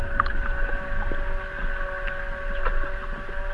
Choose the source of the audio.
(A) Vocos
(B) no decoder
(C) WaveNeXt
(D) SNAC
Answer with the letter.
B